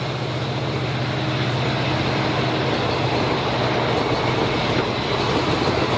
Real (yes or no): yes